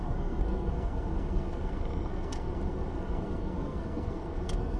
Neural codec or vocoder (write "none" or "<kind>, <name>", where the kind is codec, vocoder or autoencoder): codec, SNAC